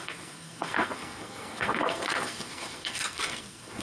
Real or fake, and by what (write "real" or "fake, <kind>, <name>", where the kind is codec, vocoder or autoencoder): fake, codec, SNAC